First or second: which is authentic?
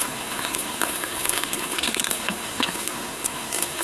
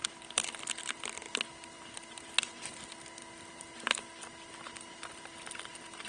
second